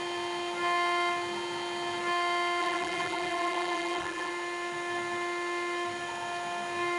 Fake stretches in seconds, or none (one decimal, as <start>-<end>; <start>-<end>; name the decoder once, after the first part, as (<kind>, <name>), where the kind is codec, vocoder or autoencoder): 2.6-4.3 (vocoder, BigVGAN v2)